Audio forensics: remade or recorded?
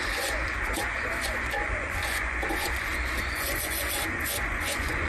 remade